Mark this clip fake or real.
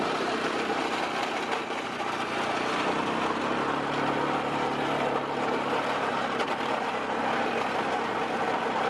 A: real